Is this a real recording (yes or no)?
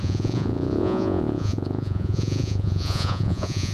no